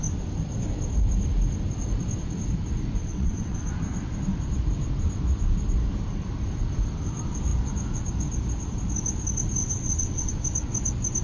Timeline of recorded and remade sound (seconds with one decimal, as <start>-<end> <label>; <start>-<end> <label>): 0.0-3.0 recorded; 3.0-3.7 remade; 3.7-9.6 recorded; 9.6-10.3 remade; 10.3-11.2 recorded